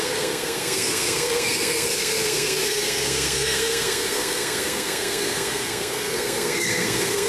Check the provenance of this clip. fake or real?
fake